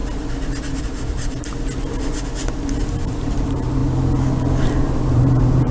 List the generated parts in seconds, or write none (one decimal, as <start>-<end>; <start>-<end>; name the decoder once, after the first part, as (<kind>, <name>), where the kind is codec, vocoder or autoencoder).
0.8-1.5 (vocoder, BigVGAN v2); 3.1-3.8; 4.6-5.7